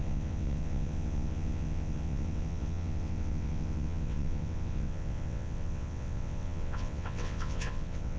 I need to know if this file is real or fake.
fake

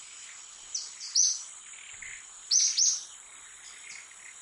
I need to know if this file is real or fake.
real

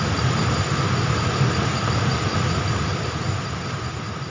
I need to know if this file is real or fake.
real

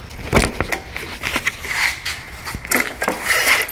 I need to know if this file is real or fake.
real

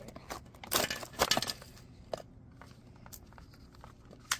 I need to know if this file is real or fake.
real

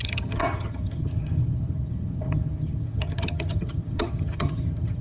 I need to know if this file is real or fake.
fake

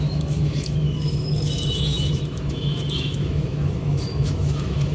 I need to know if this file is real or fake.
fake